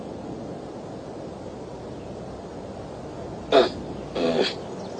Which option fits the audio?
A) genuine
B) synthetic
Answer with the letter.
A